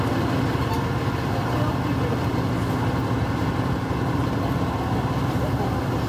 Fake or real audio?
real